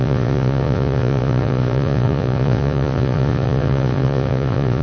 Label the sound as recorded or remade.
remade